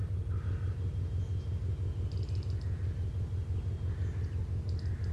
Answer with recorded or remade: recorded